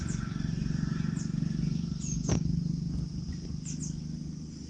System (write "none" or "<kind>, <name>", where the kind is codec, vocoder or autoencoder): none